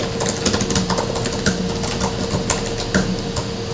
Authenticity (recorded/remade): recorded